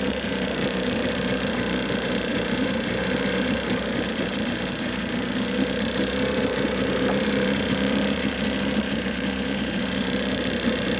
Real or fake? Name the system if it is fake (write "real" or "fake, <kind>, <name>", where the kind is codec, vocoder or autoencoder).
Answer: fake, vocoder, BigVGAN v2